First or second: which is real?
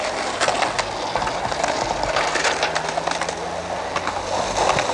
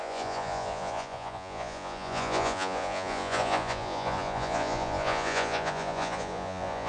first